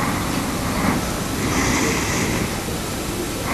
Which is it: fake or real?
real